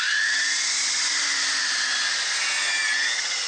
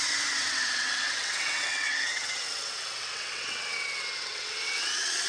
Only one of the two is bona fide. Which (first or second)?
first